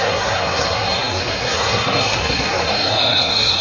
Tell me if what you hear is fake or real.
fake